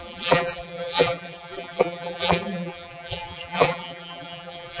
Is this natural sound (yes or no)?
no